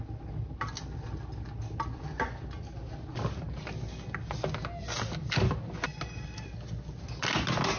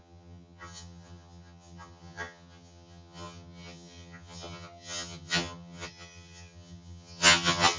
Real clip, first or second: first